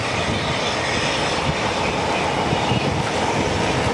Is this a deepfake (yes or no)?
no